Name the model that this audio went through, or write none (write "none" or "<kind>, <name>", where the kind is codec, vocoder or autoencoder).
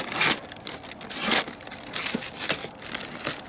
none